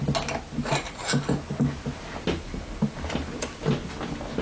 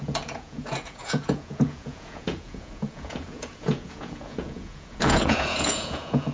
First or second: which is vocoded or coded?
second